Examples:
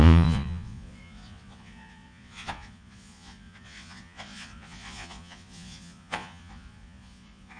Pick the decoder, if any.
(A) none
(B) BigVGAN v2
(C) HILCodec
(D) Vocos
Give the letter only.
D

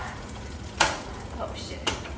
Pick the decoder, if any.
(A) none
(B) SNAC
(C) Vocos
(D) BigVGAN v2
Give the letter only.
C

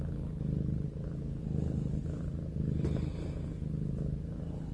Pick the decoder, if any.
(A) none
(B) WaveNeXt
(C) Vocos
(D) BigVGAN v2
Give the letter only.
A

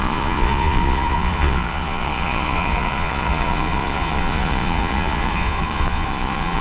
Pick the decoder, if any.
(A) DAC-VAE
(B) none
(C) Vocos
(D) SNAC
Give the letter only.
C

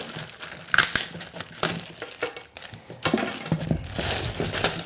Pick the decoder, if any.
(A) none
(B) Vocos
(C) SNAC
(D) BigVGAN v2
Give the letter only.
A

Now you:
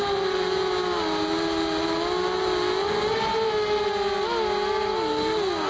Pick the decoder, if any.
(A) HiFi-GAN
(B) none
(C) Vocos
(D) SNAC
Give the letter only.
B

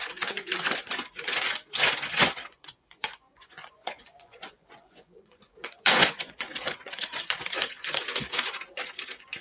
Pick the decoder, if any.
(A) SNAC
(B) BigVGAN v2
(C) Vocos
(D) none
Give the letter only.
C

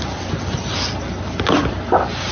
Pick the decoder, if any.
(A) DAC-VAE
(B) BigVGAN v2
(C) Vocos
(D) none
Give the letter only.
D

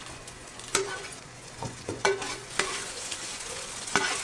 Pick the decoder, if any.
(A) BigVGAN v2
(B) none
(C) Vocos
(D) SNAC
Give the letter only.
C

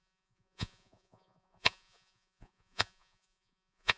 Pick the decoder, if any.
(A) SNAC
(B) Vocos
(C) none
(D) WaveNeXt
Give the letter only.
B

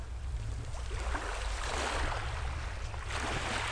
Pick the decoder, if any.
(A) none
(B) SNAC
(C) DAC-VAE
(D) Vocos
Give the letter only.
A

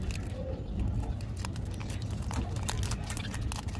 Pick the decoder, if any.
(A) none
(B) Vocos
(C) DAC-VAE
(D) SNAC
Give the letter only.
A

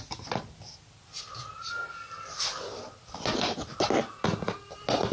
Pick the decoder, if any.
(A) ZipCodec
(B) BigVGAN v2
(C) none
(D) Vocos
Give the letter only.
C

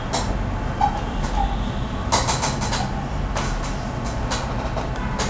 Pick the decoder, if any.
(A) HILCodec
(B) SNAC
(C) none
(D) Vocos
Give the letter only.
C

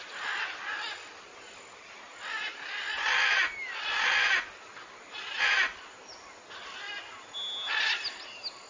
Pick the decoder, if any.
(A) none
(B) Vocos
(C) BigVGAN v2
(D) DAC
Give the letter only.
A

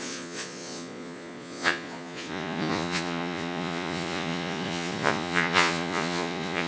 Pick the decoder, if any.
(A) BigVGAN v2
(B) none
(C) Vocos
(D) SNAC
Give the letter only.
C